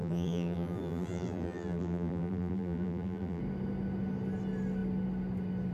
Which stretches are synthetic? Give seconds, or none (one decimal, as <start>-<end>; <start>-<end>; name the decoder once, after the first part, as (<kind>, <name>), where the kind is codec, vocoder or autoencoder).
0.0-3.4 (vocoder, BigVGAN v2)